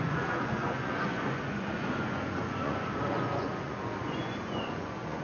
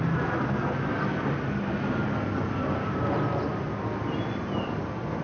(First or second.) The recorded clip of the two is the second